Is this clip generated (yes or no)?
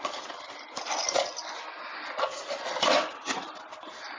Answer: no